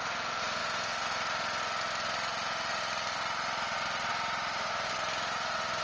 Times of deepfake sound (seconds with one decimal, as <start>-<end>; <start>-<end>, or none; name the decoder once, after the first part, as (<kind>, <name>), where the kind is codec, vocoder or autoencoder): none

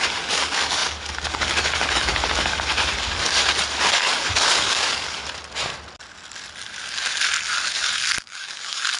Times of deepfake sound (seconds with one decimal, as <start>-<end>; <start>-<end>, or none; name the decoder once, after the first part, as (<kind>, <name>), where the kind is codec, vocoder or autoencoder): 0.0-3.4 (codec, DAC); 3.9-5.2; 8.2-9.0

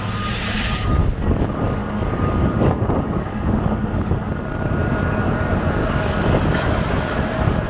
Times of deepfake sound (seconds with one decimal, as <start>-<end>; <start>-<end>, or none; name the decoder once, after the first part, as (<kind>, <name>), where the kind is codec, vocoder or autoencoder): 1.0-4.3 (codec, DAC); 5.8-6.4

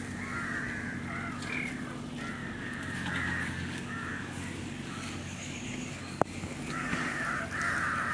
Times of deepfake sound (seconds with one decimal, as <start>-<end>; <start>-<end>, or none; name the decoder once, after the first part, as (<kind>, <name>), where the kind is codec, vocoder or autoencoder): 2.4-7.3 (codec, DAC)

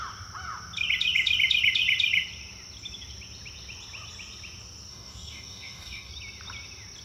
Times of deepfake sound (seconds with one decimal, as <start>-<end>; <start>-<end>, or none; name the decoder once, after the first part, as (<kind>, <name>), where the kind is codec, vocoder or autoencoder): 4.9-6.1 (codec, DAC)

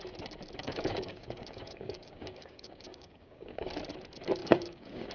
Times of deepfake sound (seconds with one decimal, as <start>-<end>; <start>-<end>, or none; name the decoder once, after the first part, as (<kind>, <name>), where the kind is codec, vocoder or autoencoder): 0.6-3.7 (codec, DAC); 4.4-5.1